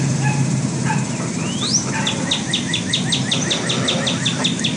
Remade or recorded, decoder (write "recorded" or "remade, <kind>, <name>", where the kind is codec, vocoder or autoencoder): recorded